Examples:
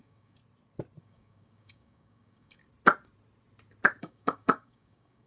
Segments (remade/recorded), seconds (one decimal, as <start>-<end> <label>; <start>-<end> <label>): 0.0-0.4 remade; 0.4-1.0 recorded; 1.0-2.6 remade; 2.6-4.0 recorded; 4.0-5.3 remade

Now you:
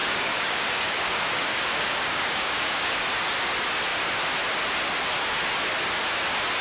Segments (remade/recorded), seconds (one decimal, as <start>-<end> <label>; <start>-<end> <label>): 0.0-3.0 remade; 3.0-6.6 recorded

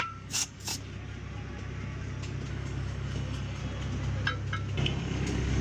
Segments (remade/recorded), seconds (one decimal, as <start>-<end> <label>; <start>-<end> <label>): 0.0-0.7 remade; 0.7-2.5 recorded; 2.5-3.6 remade; 3.6-5.0 recorded; 5.0-5.6 remade